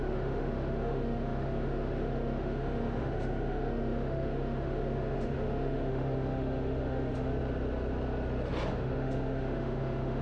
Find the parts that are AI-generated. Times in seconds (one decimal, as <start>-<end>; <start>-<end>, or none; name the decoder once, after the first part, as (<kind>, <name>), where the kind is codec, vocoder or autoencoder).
0.0-7.3 (autoencoder, DAC-VAE); 8.7-10.2